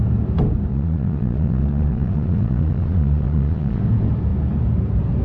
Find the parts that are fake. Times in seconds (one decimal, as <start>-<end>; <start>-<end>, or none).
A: 0.7-3.8